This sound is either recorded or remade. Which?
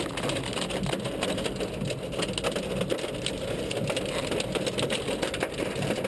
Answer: recorded